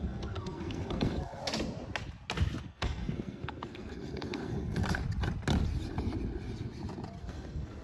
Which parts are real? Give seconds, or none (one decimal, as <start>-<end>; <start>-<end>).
1.4-2.6; 5.0-7.2